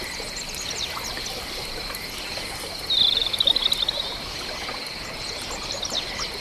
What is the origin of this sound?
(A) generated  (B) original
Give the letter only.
B